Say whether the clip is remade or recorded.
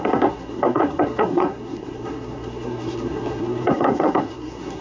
remade